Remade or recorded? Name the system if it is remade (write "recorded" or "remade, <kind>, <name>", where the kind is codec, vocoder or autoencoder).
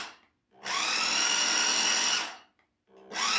recorded